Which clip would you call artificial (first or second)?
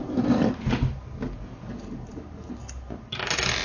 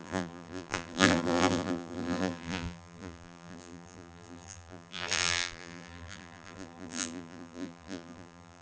second